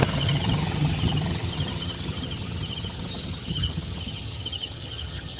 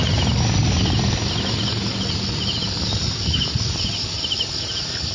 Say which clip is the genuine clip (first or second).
second